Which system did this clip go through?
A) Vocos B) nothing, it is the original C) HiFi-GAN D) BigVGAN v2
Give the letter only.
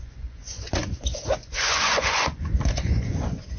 A